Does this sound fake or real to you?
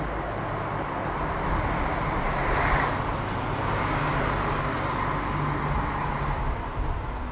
real